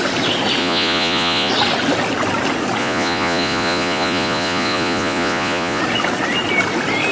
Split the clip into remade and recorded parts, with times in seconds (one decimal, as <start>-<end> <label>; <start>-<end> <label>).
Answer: 0.0-0.6 recorded; 0.6-1.5 remade; 1.5-2.8 recorded; 2.8-5.8 remade; 5.8-7.1 recorded